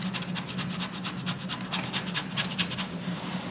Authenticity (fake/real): real